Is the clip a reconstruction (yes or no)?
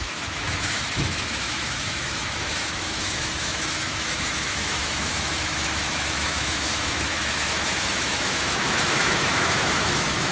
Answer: yes